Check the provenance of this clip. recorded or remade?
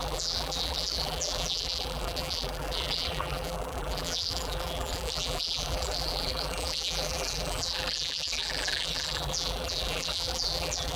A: remade